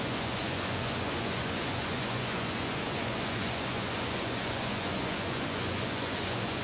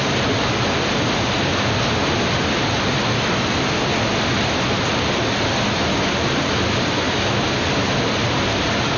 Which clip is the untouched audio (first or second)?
second